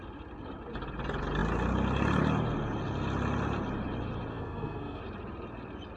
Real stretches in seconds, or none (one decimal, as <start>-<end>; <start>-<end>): 0.0-4.3; 5.0-6.0